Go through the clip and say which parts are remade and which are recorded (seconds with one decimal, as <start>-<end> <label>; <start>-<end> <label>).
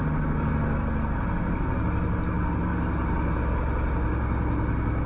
0.0-5.1 recorded